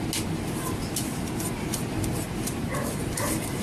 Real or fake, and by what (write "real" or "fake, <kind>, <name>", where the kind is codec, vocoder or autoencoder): real